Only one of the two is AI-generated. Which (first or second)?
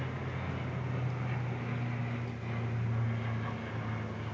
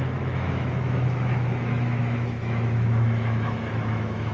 second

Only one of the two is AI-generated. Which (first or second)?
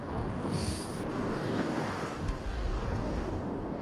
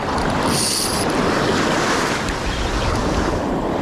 first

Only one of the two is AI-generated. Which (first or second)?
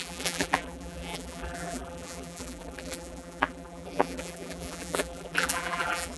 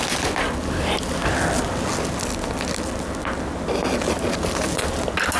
first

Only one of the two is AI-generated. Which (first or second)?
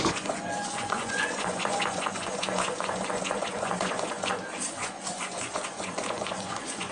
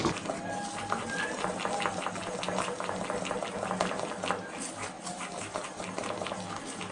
first